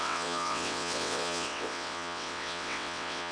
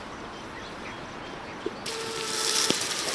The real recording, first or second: second